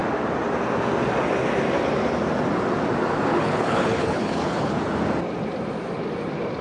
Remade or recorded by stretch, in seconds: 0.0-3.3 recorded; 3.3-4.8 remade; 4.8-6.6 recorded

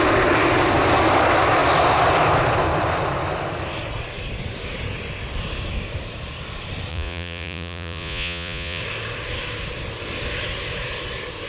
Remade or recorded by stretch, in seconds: 0.0-6.9 recorded; 6.9-8.8 remade; 8.8-11.5 recorded